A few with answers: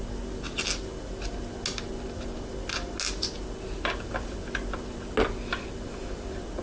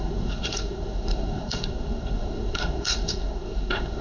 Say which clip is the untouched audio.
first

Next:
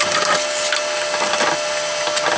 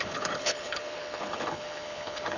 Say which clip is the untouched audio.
first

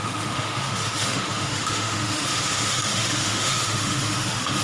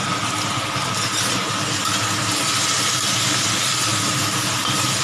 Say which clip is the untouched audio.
second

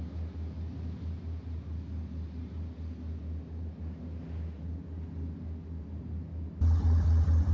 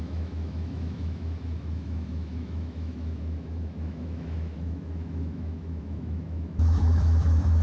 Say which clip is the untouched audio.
first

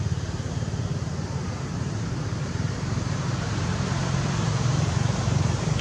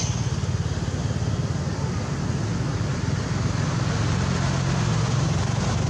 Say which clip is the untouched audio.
second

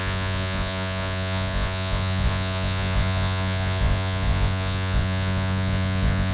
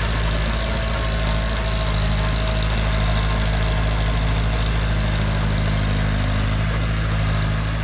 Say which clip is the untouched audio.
second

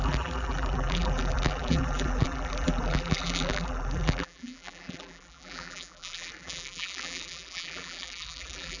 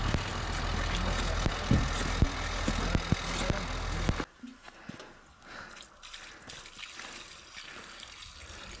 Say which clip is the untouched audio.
second